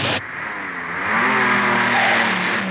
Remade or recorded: recorded